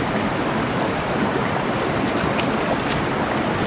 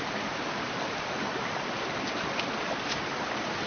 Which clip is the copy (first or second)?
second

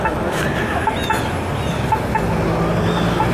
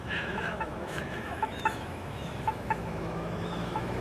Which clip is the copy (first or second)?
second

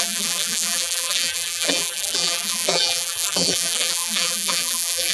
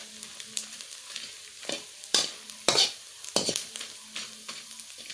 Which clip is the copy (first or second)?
first